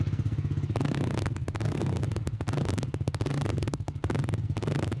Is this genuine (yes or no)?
no